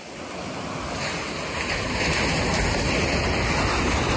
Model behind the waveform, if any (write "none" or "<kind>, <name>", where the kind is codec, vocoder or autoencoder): none